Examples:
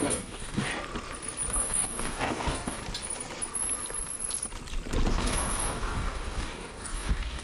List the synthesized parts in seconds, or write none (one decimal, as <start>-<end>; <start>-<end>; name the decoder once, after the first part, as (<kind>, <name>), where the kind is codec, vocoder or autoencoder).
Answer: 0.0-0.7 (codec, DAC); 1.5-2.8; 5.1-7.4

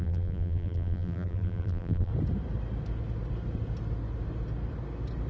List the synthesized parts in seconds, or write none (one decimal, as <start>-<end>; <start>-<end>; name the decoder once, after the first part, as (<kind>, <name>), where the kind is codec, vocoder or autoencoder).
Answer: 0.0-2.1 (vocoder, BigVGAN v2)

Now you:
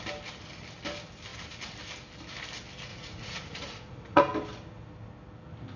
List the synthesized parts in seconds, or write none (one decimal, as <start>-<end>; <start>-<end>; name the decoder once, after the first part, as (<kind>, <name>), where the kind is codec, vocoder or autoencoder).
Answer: 2.9-4.2 (vocoder, Vocos)

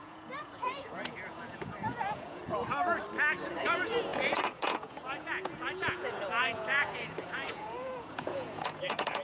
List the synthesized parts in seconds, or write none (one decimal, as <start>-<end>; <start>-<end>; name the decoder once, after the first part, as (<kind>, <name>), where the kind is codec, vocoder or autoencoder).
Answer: 0.0-2.4 (vocoder, Vocos); 3.6-9.2

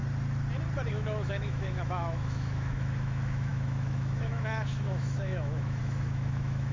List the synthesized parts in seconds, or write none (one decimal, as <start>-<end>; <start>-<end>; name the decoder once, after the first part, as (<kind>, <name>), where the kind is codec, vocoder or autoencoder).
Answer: 0.9-6.7 (autoencoder, DAC-VAE)

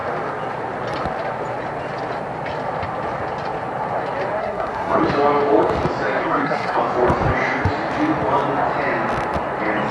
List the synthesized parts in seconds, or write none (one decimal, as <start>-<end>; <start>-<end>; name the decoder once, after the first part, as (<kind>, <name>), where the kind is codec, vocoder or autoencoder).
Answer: 4.4-5.0 (codec, SNAC); 6.2-6.8

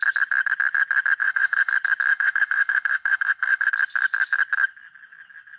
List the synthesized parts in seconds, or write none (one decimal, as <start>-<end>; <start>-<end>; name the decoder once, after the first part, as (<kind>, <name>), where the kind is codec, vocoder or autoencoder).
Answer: 1.2-1.7 (autoencoder, DAC-VAE); 2.1-3.7